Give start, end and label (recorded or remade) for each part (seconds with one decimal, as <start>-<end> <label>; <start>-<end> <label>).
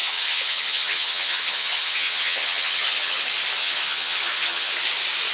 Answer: 0.0-3.2 remade; 3.2-3.6 recorded; 3.6-4.7 remade; 4.7-5.3 recorded